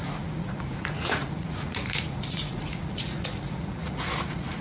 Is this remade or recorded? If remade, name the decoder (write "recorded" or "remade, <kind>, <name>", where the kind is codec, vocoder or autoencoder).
remade, vocoder, Vocos